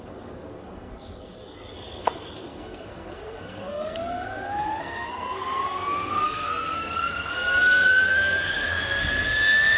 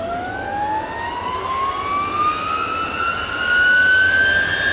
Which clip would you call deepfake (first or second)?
first